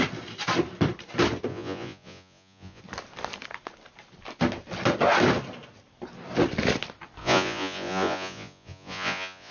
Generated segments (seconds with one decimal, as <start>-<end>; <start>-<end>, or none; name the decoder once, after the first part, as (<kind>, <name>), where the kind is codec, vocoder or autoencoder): 1.5-2.8 (vocoder, Vocos); 7.2-9.5